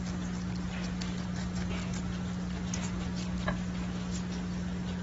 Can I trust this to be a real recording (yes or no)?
yes